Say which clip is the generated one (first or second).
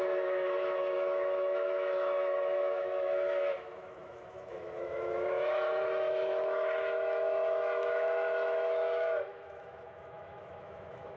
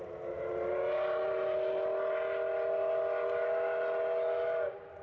first